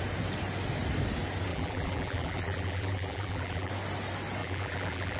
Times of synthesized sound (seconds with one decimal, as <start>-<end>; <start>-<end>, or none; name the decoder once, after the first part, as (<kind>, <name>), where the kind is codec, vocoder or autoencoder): 1.5-3.7 (vocoder, BigVGAN v2); 4.4-5.2